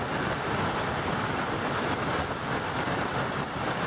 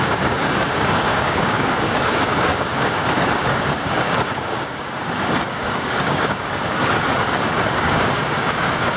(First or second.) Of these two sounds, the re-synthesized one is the second